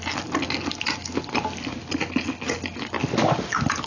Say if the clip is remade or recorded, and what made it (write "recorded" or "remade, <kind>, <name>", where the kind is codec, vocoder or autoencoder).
recorded